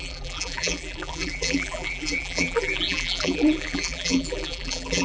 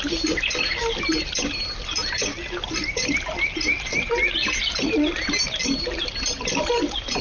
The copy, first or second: first